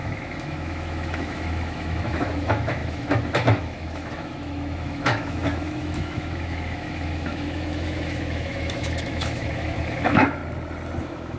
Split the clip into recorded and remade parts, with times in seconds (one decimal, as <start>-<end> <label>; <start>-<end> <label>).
0.0-10.4 remade; 10.4-11.0 recorded; 11.0-11.4 remade